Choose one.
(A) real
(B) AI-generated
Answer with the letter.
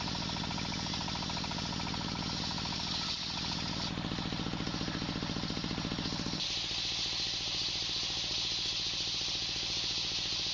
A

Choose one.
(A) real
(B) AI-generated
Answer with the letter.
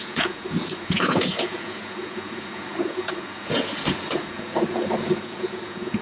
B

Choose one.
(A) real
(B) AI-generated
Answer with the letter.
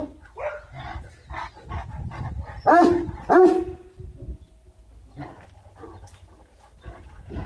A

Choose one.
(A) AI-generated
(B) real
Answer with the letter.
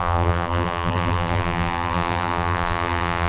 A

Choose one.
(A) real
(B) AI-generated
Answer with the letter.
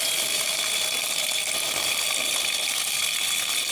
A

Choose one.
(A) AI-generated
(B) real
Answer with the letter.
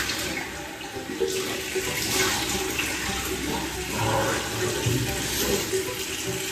B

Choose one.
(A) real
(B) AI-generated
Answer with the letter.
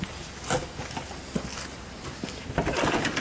A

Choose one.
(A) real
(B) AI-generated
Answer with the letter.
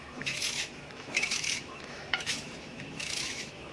B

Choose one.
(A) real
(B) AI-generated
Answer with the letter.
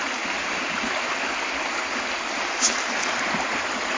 A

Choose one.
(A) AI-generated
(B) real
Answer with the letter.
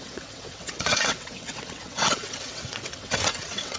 A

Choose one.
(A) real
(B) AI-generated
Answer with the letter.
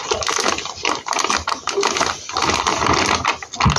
A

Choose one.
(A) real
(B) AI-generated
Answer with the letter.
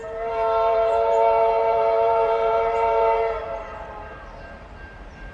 B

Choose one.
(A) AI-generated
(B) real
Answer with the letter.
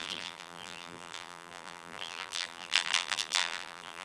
A